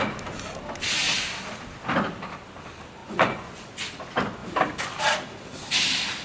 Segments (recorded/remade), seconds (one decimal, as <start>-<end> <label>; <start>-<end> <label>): 0.0-3.0 recorded; 3.0-3.7 remade; 3.7-6.2 recorded